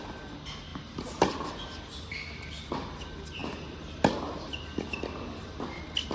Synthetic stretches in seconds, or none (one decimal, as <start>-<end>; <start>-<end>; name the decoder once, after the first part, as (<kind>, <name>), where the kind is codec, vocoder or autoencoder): none